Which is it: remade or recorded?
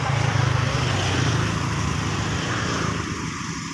recorded